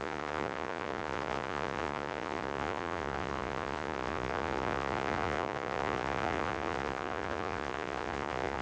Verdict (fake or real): fake